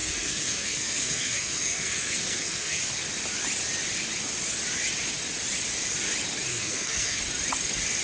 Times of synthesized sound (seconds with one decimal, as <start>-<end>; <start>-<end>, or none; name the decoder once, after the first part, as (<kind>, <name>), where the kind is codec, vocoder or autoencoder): 0.0-2.8 (codec, SNAC); 6.5-7.2